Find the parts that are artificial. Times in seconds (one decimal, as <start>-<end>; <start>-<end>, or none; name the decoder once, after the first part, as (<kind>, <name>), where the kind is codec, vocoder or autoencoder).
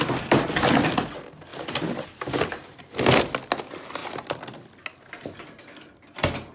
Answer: none